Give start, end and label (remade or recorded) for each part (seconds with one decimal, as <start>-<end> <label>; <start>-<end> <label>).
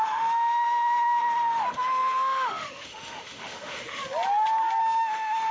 0.0-4.0 remade; 4.0-4.8 recorded; 4.8-5.5 remade